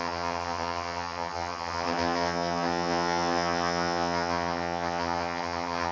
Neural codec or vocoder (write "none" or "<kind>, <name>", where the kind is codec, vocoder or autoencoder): vocoder, HiFi-GAN